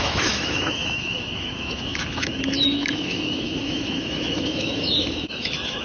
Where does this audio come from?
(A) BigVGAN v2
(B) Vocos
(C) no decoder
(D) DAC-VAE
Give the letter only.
D